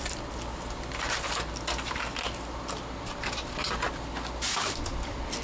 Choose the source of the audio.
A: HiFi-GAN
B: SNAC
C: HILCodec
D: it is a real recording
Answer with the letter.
D